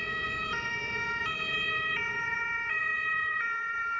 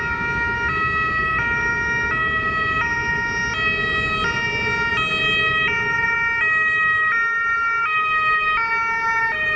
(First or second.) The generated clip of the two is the first